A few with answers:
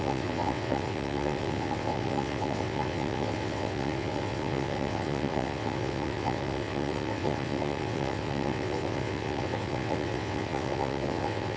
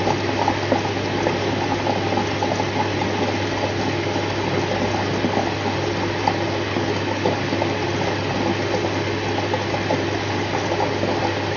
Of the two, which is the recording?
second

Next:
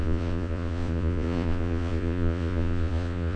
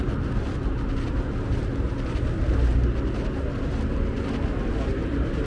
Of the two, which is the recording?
second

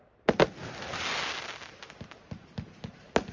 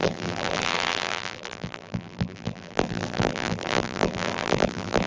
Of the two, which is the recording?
first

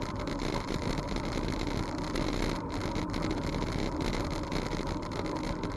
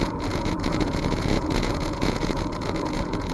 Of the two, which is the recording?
first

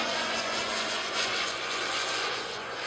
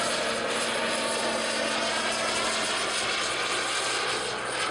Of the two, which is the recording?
second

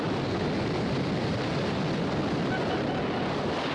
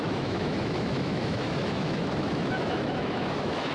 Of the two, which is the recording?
first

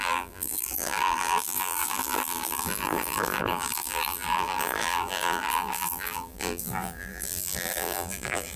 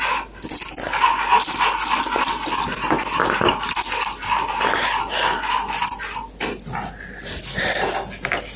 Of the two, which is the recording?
second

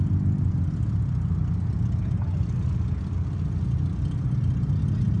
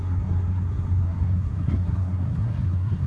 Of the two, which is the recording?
first